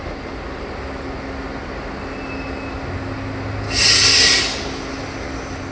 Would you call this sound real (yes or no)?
yes